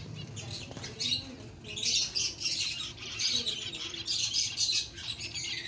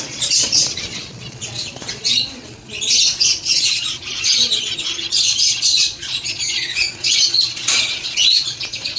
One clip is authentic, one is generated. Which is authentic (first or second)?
first